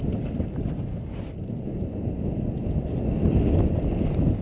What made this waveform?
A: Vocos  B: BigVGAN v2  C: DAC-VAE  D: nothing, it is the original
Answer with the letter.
D